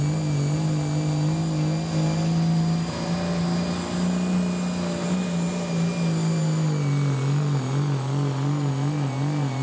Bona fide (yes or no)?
yes